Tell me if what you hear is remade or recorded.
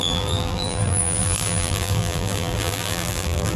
remade